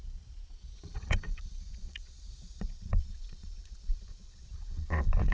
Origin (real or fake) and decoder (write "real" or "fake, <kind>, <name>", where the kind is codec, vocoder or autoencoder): fake, vocoder, Vocos